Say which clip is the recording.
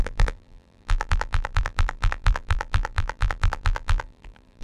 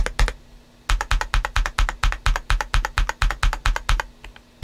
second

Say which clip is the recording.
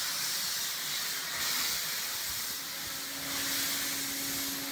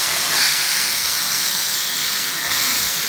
first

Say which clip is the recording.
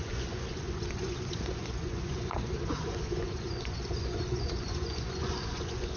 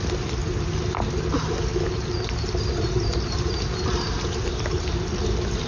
second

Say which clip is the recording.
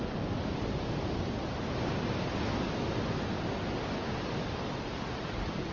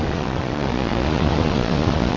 first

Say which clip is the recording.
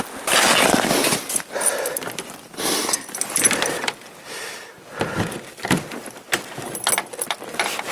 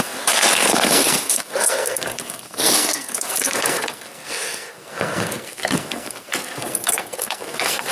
first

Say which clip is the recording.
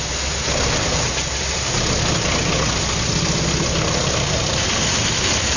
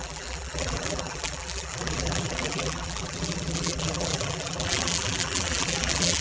first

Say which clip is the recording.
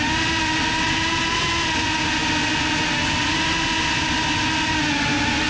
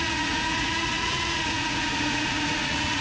first